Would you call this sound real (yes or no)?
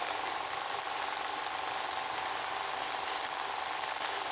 yes